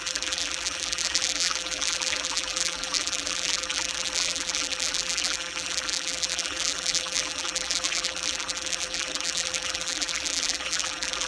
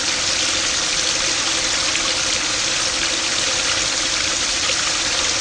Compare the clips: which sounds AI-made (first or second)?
first